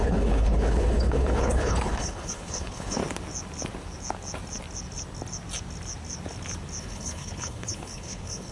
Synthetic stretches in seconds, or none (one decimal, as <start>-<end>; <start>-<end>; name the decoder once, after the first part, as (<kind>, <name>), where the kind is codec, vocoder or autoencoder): 0.0-3.0 (codec, HILCodec); 6.8-8.5